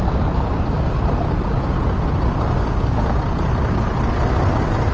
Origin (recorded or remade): recorded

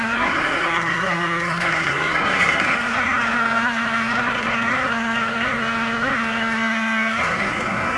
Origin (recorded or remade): remade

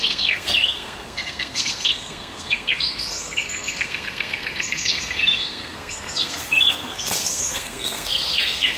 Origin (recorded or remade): remade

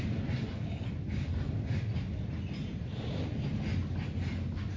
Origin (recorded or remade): recorded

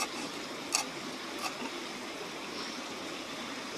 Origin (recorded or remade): recorded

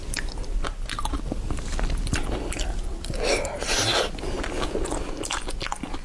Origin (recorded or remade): recorded